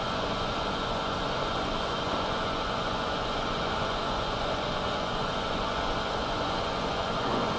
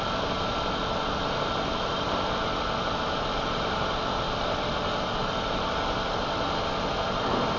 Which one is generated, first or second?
first